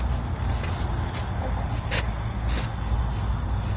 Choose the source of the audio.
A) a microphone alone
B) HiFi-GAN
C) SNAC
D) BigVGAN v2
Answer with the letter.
A